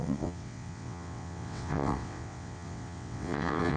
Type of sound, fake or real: fake